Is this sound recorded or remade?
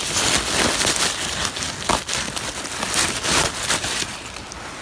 recorded